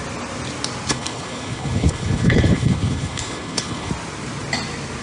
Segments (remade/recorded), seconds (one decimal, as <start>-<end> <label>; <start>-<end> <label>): 0.0-0.9 recorded; 0.9-3.9 remade; 3.9-5.0 recorded